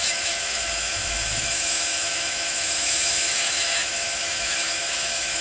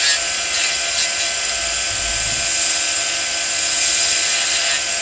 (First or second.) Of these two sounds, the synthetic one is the first